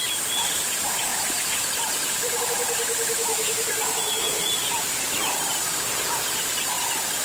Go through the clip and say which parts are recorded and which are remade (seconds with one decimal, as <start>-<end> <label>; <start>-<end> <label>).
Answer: 0.0-1.1 recorded; 1.1-5.3 remade; 5.3-7.2 recorded